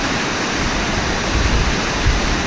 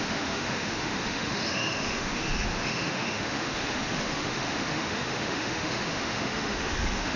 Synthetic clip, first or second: second